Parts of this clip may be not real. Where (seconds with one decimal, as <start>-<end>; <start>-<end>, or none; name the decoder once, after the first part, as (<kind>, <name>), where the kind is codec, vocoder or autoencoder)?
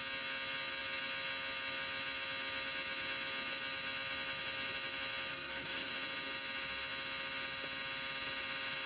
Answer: 5.3-5.9 (codec, SNAC)